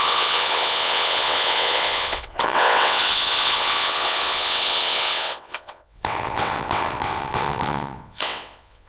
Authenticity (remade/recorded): remade